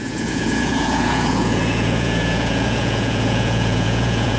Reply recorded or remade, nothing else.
remade